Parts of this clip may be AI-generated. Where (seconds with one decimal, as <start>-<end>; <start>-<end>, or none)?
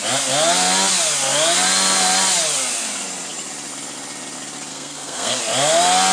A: 4.7-5.4